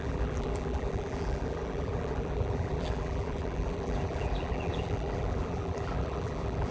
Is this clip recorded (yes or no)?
no